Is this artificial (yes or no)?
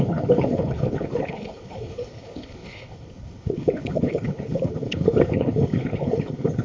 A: yes